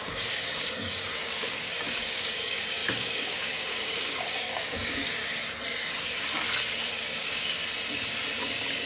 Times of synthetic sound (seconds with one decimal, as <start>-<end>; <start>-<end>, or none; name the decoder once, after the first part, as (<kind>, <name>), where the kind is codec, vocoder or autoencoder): 0.0-5.2 (codec, DAC); 6.9-7.6; 8.4-8.9